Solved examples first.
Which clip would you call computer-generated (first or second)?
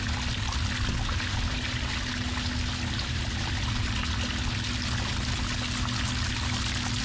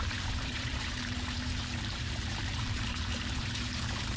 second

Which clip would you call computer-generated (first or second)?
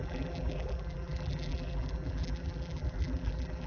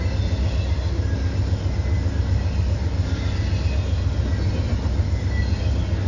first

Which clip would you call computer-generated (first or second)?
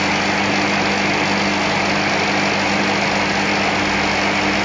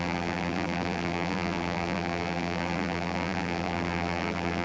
second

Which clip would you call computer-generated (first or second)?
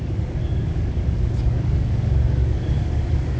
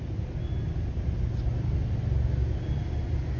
first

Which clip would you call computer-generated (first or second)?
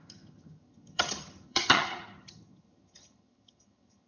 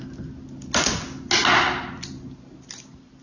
first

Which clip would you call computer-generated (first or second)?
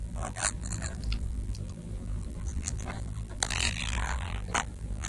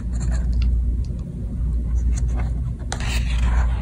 first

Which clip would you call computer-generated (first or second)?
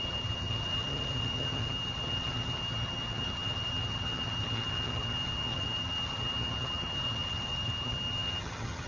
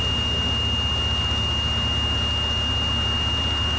first